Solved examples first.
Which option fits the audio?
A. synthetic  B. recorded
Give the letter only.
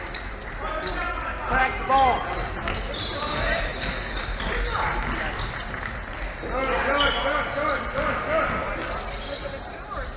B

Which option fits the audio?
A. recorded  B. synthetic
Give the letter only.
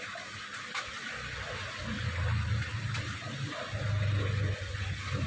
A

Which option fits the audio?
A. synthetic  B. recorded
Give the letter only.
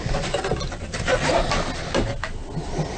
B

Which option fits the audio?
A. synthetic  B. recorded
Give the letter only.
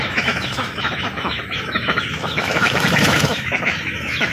A